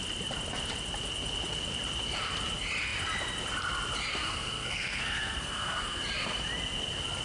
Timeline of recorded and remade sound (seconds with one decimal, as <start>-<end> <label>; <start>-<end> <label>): 0.0-4.1 recorded; 4.1-6.0 remade; 6.0-7.2 recorded